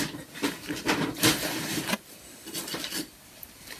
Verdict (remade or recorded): recorded